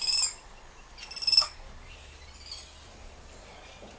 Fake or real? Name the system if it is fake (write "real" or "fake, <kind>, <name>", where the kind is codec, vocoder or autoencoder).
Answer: real